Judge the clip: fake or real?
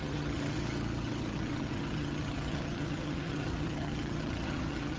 fake